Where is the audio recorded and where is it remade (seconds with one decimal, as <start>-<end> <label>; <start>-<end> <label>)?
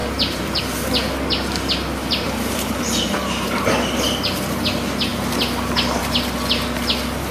0.0-0.6 remade; 0.6-2.0 recorded; 2.0-3.9 remade; 3.9-7.3 recorded